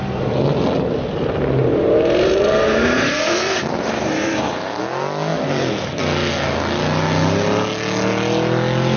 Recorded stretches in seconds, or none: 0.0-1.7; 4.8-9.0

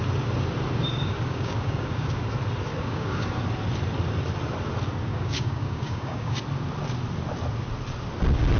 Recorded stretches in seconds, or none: 0.0-0.9; 2.2-2.7; 3.3-5.1; 6.4-8.6

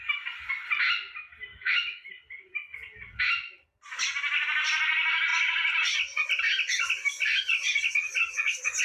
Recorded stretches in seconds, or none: 0.0-1.5; 2.1-8.8

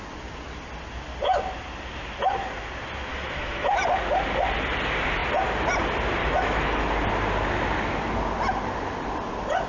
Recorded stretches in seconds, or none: 0.0-3.1; 3.7-6.2; 6.9-9.7

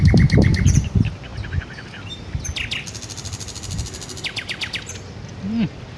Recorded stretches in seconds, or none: 0.0-6.0

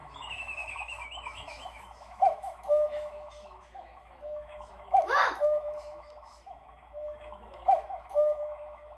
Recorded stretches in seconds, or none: none

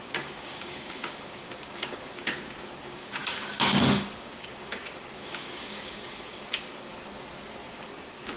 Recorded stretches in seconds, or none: 6.9-7.7

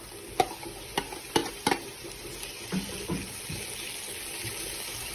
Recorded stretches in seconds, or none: 0.0-5.1